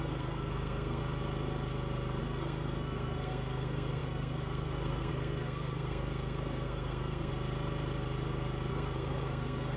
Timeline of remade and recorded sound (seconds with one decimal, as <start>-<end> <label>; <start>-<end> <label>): 0.0-1.0 remade; 1.0-2.2 recorded; 2.2-7.3 remade; 7.3-8.7 recorded; 8.7-9.8 remade